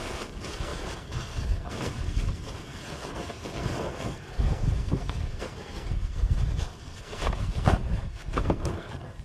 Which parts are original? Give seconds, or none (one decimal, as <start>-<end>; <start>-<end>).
none